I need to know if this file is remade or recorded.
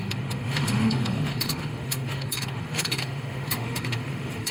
remade